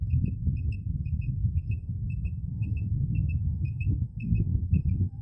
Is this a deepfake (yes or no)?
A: yes